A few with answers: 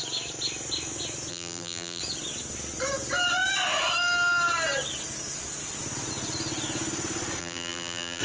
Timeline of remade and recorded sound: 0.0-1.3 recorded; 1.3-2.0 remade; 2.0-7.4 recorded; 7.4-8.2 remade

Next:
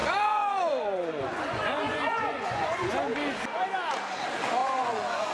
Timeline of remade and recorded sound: 0.0-2.9 remade; 2.9-4.6 recorded; 4.6-5.3 remade

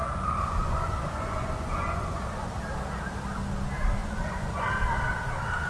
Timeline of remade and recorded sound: 0.0-2.5 remade; 2.5-4.0 recorded; 4.0-4.7 remade; 4.7-5.7 recorded

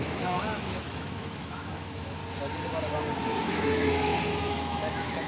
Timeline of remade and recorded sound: 0.0-2.2 remade; 2.2-3.2 recorded; 3.2-5.3 remade

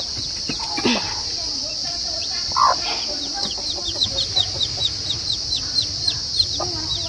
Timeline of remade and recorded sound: 0.0-1.8 recorded; 1.8-2.9 remade; 2.9-7.1 recorded

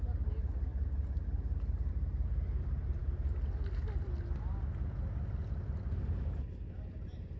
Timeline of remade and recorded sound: 0.0-7.4 recorded

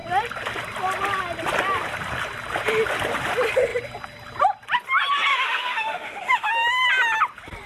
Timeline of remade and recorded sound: 0.0-5.3 recorded; 5.3-6.5 remade; 6.5-7.7 recorded

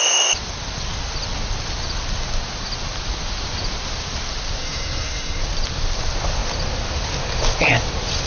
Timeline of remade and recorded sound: 0.0-4.6 recorded; 4.6-5.4 remade; 5.4-8.3 recorded